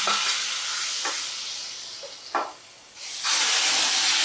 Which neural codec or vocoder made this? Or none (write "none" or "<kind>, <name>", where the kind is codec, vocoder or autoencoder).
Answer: none